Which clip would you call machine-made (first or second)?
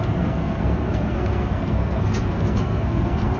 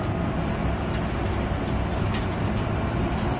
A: first